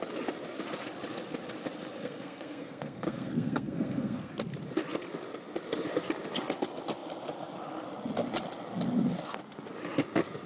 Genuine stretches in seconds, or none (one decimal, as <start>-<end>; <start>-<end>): 0.0-2.0; 4.3-10.5